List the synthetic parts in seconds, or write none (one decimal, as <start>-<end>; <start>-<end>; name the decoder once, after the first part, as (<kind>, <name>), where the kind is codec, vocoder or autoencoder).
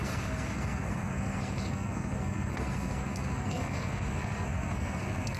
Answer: 0.0-5.4 (codec, SNAC)